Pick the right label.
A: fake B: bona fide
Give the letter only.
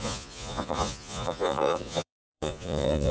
A